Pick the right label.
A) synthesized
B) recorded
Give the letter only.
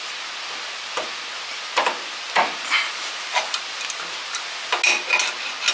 B